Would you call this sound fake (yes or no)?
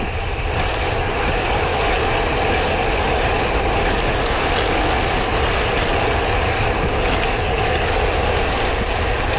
no